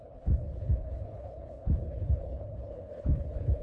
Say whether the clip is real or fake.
fake